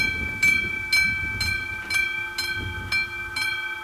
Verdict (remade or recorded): recorded